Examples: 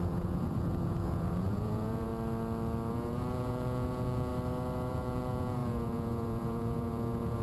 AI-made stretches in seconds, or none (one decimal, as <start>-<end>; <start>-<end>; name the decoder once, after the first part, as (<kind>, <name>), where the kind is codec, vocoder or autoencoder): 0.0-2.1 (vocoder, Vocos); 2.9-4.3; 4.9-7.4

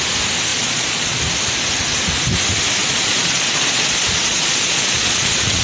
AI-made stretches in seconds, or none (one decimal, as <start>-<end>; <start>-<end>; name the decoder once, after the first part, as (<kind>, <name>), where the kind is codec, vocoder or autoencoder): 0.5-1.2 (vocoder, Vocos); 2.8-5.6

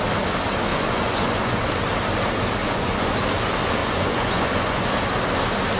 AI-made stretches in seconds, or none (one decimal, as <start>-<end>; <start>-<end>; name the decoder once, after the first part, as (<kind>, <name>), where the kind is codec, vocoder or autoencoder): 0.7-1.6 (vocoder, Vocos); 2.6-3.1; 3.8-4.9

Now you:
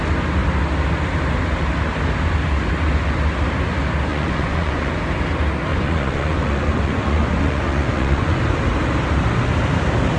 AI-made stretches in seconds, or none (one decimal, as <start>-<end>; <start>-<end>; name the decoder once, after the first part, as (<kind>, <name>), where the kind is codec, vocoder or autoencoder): 4.1-4.9 (vocoder, Vocos); 5.7-8.4

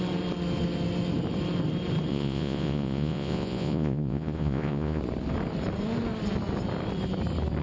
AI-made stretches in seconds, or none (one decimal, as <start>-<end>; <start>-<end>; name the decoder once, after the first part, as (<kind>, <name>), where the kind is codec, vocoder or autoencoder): 2.1-5.0 (vocoder, Vocos)

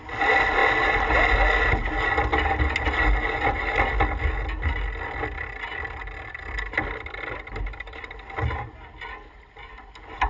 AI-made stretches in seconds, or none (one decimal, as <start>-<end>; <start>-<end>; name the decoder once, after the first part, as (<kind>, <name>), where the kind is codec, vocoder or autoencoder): none